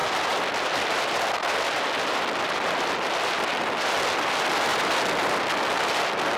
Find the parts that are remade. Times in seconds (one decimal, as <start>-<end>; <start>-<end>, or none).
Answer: 0.0-3.8; 4.7-5.4